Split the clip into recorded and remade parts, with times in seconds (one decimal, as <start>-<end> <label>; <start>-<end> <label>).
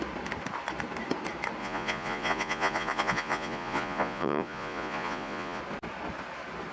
0.0-1.6 recorded; 1.6-5.6 remade; 5.6-6.7 recorded